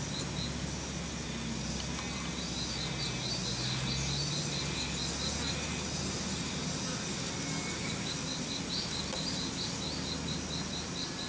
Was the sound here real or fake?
real